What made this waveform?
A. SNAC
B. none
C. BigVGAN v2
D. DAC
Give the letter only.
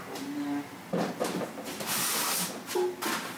B